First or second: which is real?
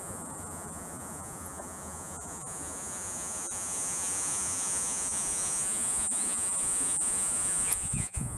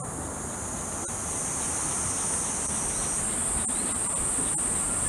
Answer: second